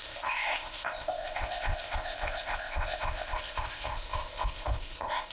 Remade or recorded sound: remade